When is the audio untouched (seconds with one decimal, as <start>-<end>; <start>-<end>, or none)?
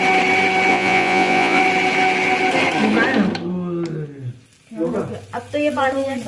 0.0-0.7; 1.6-6.3